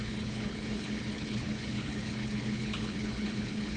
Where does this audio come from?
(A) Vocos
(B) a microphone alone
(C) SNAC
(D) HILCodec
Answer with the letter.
D